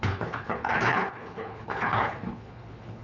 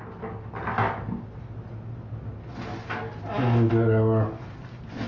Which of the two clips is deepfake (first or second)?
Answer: first